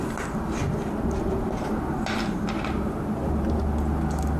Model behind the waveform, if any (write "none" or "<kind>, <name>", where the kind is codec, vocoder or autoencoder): none